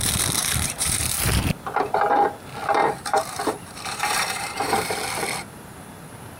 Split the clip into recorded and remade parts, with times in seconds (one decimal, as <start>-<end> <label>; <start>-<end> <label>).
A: 0.0-0.4 recorded; 0.4-2.0 remade; 2.0-2.8 recorded; 2.8-4.9 remade; 4.9-6.4 recorded